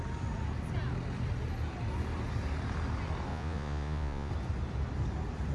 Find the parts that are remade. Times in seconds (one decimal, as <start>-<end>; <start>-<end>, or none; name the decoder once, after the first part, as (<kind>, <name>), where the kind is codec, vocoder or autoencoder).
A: 3.3-4.3 (vocoder, Vocos)